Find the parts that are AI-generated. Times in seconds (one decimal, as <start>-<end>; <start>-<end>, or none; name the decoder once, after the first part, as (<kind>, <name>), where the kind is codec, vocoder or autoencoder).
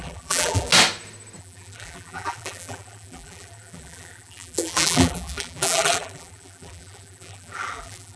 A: 0.0-0.7 (vocoder, BigVGAN v2); 1.4-8.2